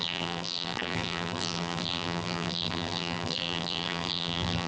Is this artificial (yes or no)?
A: yes